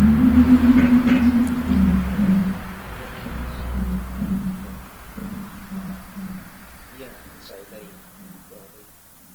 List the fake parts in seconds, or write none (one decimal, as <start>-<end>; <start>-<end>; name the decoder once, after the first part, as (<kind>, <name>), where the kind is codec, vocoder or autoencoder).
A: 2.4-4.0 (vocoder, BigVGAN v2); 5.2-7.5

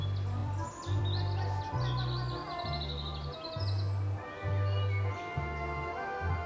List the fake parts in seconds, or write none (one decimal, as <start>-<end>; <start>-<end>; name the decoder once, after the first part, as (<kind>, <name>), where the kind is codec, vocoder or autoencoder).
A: 0.4-1.0 (vocoder, BigVGAN v2)

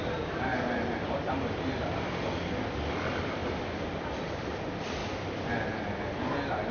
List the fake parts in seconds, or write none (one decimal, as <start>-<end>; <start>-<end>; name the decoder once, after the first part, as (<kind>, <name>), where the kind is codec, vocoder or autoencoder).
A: 0.0-3.4 (vocoder, BigVGAN v2); 4.0-5.0

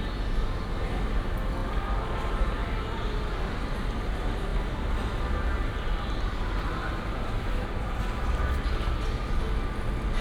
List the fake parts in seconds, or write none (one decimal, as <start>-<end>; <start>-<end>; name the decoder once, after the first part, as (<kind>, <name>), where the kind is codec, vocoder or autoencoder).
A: none

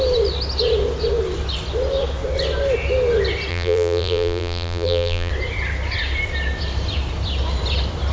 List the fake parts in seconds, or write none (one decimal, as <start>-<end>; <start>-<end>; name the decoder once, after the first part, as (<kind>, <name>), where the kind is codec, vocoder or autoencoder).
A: 3.5-5.3 (vocoder, BigVGAN v2)